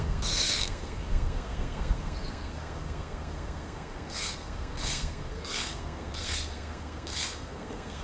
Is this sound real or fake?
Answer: fake